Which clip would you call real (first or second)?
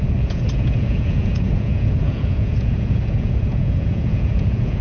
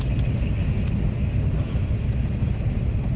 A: second